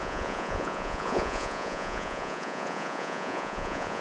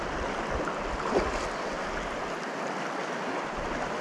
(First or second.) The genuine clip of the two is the second